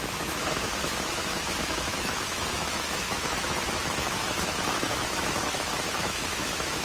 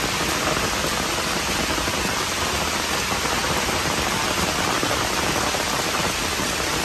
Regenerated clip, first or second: first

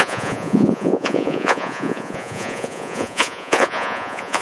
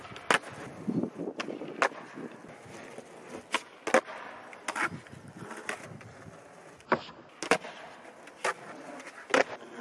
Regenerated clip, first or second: first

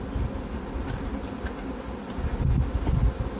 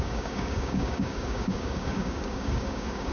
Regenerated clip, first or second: second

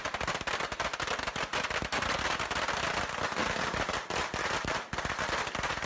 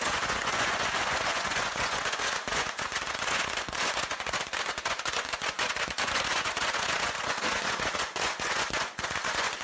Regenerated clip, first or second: second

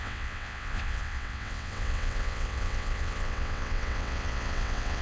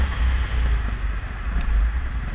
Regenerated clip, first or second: first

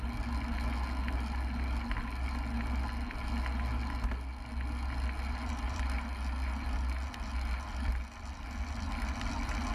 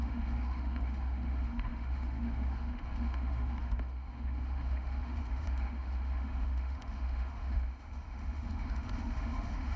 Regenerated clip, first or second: second